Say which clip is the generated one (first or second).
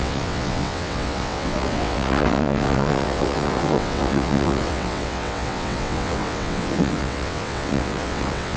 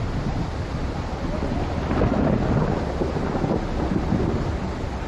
first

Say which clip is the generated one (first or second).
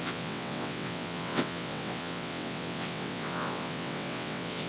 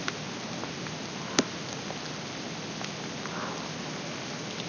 first